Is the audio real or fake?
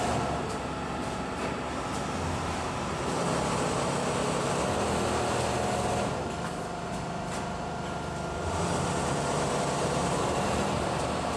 real